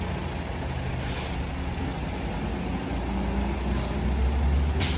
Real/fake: real